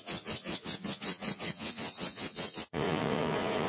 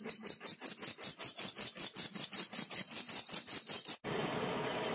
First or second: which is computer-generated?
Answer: first